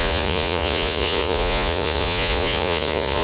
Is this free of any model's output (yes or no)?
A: no